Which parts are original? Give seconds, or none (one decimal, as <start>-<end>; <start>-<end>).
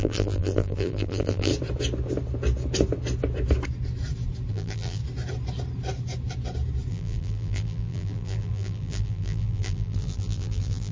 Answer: 1.5-4.5; 5.0-6.9